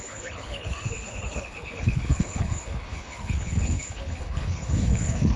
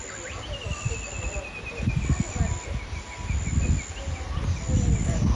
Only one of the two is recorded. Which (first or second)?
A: second